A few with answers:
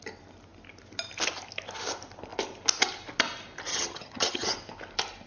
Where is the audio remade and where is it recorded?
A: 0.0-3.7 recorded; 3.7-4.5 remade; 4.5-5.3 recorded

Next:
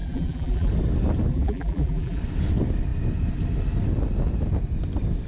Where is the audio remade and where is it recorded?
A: 0.0-0.7 remade; 0.7-1.3 recorded; 1.3-2.2 remade; 2.2-5.3 recorded

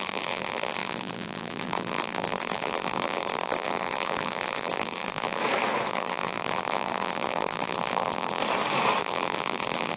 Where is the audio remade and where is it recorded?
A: 0.0-5.4 remade; 5.4-5.9 recorded; 5.9-8.4 remade; 8.4-9.0 recorded; 9.0-10.0 remade

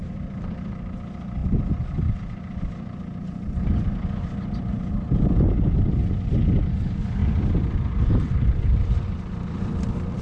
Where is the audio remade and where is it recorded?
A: 0.0-0.5 remade; 0.5-1.4 recorded; 1.4-3.9 remade; 3.9-7.2 recorded; 7.2-10.2 remade

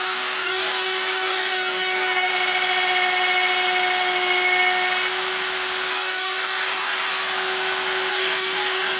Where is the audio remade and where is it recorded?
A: 0.0-2.3 remade; 2.3-5.9 recorded; 5.9-7.1 remade; 7.1-8.1 recorded; 8.1-9.0 remade